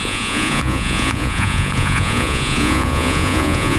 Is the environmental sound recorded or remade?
remade